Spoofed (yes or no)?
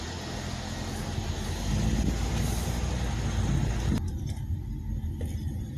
no